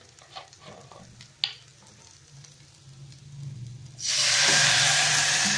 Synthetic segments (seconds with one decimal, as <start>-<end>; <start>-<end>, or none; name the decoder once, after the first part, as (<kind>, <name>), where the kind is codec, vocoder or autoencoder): none